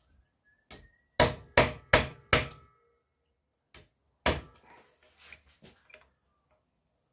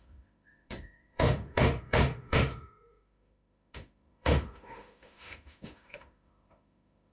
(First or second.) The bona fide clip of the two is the first